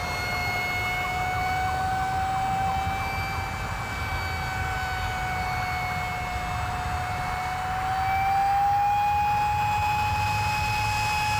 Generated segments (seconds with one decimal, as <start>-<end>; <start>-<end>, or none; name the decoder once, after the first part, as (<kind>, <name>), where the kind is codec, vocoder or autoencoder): none